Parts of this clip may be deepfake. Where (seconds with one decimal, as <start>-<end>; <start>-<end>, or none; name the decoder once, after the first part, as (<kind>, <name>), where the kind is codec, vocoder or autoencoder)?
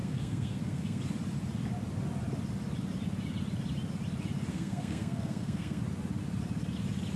0.0-1.0 (codec, SNAC); 4.5-5.8